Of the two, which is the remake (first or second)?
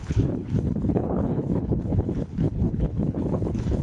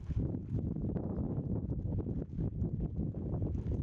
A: first